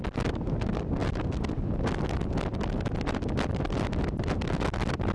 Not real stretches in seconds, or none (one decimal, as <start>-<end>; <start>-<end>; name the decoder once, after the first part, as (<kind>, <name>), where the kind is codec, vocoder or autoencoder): none